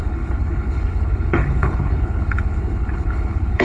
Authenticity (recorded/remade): remade